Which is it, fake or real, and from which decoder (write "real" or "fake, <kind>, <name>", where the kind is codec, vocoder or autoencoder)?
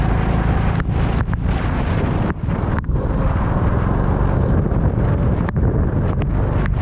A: real